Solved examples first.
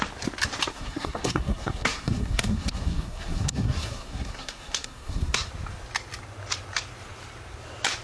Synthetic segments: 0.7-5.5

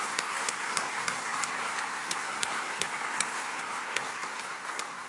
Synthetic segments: 0.0-5.1

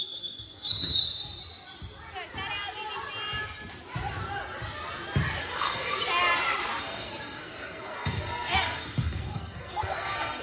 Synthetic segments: 0.0-1.0; 5.4-6.0; 6.8-10.4

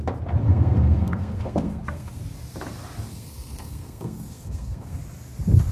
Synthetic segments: 0.4-2.2; 3.1-5.0

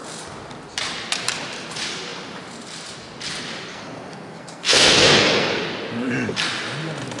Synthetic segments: 3.7-5.6

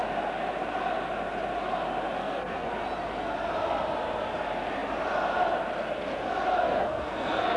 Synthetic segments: 2.2-2.7; 6.7-7.6

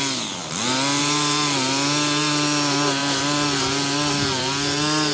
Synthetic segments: none

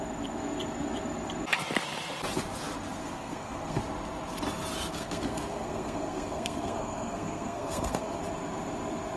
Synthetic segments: 3.0-3.8; 4.9-8.2